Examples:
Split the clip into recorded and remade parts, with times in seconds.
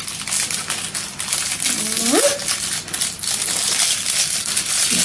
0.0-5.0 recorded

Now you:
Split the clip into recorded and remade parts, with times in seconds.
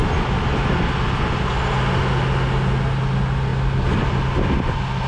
0.0-5.1 recorded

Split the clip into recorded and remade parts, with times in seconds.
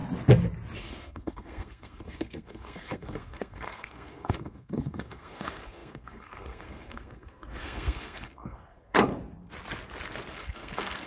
0.0-0.8 recorded; 0.8-9.1 remade; 9.1-10.3 recorded; 10.3-11.1 remade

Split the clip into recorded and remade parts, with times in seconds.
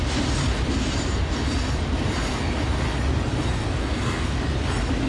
0.0-3.8 recorded; 3.8-4.4 remade; 4.4-5.1 recorded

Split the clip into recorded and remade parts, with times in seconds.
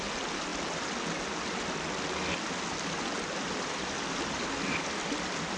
0.0-5.6 recorded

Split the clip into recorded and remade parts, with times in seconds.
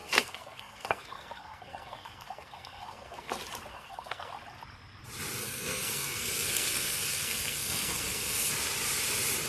0.0-3.3 remade; 3.3-3.7 recorded; 3.7-4.3 remade; 4.3-5.4 recorded; 5.4-8.5 remade; 8.5-9.5 recorded